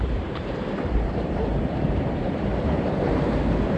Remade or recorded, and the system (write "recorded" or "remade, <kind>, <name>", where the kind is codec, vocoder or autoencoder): remade, vocoder, BigVGAN v2